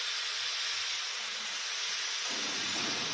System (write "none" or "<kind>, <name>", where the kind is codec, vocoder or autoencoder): vocoder, Vocos